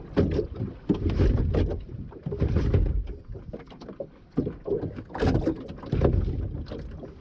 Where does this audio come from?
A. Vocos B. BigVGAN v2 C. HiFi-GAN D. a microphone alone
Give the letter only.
D